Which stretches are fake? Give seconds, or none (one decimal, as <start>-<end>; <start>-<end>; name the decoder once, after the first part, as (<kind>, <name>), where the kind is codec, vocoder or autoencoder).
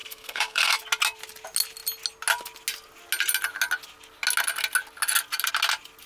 0.0-0.8 (codec, SNAC)